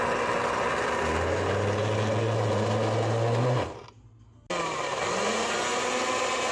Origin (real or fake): real